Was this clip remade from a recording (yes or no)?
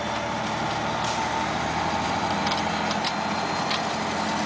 no